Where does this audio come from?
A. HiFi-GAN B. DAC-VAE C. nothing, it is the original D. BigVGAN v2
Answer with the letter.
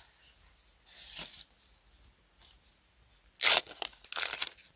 C